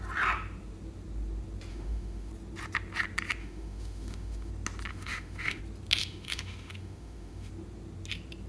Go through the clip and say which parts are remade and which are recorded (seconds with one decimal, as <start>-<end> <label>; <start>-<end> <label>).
0.0-1.7 recorded; 1.7-2.3 remade; 2.3-3.4 recorded; 3.4-4.5 remade; 4.5-4.9 recorded; 4.9-5.6 remade; 5.6-6.0 recorded; 6.0-7.5 remade; 7.5-8.5 recorded